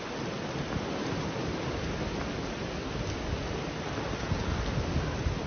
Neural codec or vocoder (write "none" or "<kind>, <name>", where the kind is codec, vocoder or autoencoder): none